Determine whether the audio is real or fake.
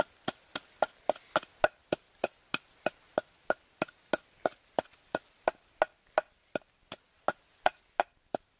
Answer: real